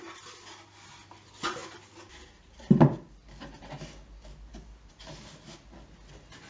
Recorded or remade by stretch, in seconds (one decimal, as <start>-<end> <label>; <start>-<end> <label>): 0.0-6.5 recorded